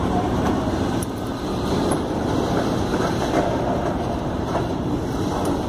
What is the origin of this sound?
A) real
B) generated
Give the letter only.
B